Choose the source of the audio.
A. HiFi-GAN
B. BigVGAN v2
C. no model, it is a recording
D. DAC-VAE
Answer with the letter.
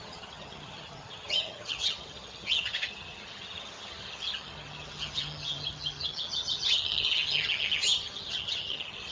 A